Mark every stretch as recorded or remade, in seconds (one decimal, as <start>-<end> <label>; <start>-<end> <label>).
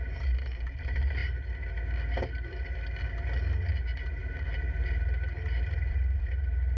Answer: 0.0-1.2 remade; 1.2-3.7 recorded; 3.7-6.8 remade